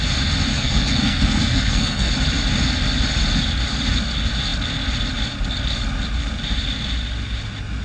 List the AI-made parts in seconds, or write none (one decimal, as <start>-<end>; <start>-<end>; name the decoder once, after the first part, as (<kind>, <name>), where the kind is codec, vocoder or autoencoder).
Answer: 0.5-2.1 (codec, SNAC)